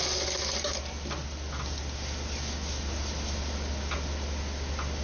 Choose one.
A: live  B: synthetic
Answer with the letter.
A